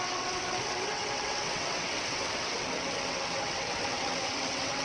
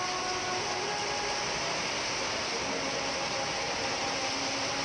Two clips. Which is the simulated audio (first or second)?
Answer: first